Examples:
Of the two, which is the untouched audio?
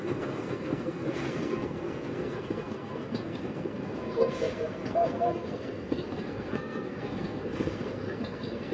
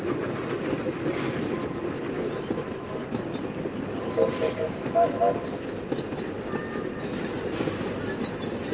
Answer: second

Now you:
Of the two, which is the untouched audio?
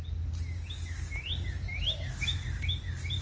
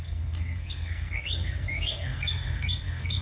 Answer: first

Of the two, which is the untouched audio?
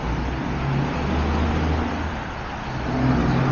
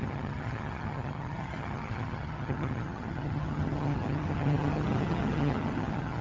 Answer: first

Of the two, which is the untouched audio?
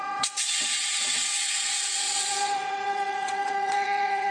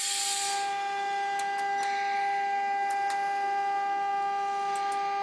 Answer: second